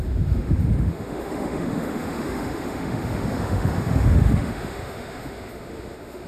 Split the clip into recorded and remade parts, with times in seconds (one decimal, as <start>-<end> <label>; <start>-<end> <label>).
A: 0.0-6.3 remade